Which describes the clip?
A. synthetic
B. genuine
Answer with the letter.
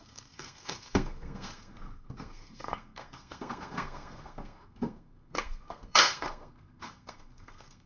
A